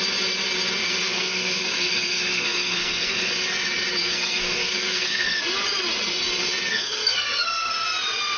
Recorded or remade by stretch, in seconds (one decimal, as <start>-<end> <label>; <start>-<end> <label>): 0.0-0.8 recorded; 0.8-3.3 remade; 3.3-4.0 recorded; 4.0-5.4 remade; 5.4-6.7 recorded; 6.7-7.7 remade; 7.7-8.4 recorded